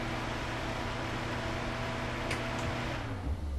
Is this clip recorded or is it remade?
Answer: recorded